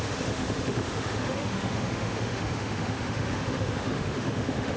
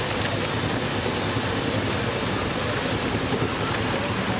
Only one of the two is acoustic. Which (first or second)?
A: second